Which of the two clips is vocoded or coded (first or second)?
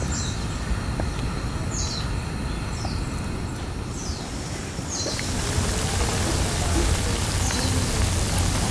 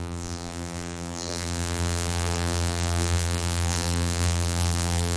second